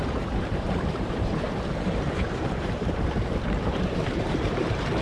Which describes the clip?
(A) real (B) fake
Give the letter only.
B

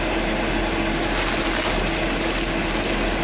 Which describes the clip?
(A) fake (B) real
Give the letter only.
B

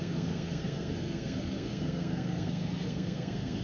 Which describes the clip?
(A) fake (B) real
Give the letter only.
A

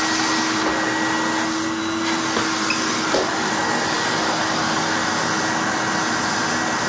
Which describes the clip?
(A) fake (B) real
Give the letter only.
B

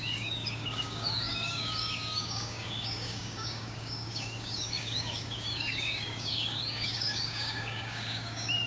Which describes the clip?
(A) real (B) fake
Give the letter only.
B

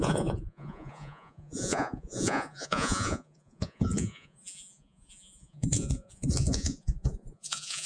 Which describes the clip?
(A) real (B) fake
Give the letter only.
B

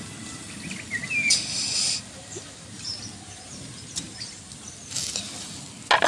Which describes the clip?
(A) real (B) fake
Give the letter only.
A